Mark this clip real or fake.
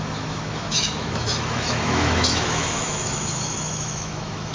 fake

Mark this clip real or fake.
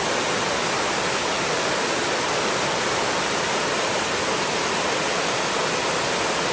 real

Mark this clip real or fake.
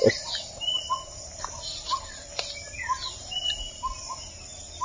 real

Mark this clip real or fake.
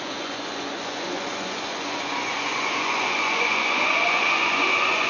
fake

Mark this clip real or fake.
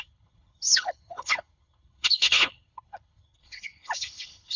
fake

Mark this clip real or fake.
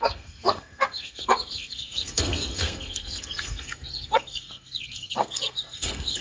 fake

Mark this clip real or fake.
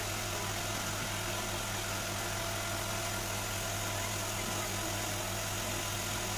real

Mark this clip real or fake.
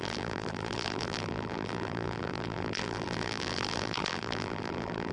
fake